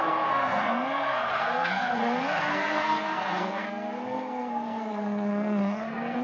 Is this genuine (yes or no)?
no